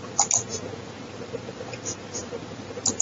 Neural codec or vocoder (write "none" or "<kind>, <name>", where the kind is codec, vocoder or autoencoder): none